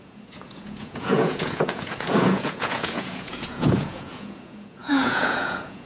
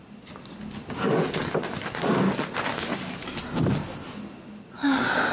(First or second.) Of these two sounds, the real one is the second